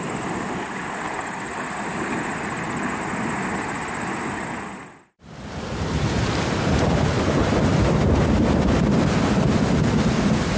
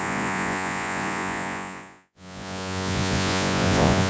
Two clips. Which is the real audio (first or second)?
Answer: first